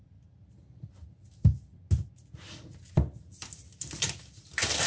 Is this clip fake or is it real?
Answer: real